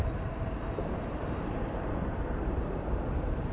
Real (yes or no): no